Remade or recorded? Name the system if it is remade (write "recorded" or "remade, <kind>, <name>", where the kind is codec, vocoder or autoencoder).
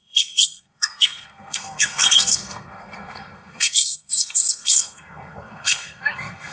remade, codec, SNAC